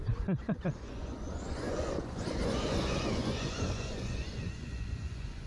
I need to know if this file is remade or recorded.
remade